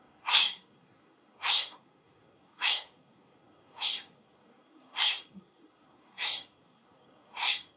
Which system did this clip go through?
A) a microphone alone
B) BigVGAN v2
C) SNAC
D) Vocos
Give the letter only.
C